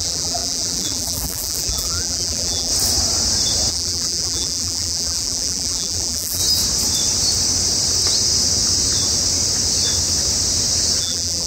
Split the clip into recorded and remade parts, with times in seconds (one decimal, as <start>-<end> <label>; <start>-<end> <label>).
0.0-2.7 remade; 2.7-3.7 recorded; 3.7-6.4 remade; 6.4-11.0 recorded; 11.0-11.5 remade

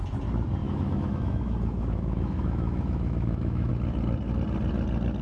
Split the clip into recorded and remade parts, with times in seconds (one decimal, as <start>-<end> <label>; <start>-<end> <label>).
0.0-0.6 recorded; 0.6-3.7 remade; 3.7-5.2 recorded

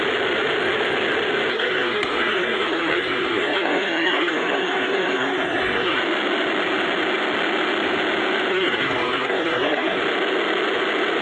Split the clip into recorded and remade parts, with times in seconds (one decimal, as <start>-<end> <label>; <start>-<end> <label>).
0.0-1.5 recorded; 1.5-6.0 remade; 6.0-8.5 recorded; 8.5-10.0 remade; 10.0-11.2 recorded

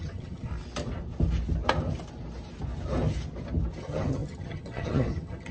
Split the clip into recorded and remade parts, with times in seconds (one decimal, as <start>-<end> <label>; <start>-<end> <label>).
0.0-0.5 remade; 0.5-3.8 recorded; 3.8-5.5 remade